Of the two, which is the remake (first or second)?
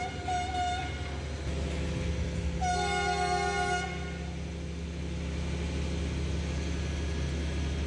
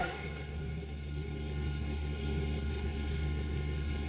second